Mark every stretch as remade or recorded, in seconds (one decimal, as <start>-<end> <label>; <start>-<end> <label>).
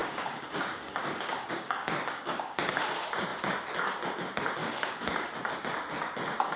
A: 0.0-2.8 remade; 2.8-4.6 recorded; 4.6-5.3 remade; 5.3-6.6 recorded